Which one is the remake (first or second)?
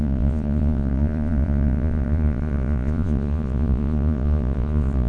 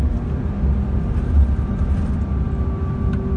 first